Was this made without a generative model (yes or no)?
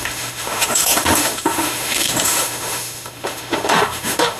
no